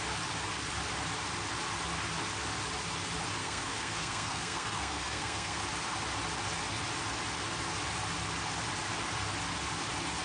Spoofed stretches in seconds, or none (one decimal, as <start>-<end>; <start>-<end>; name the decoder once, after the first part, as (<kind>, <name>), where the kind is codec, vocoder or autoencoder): 3.4-5.6 (codec, SNAC)

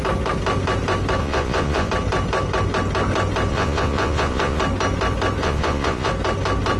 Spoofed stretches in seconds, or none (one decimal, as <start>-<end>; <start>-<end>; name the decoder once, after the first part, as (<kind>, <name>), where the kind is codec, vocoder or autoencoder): 1.2-1.9 (vocoder, Vocos); 3.5-4.6; 5.4-6.1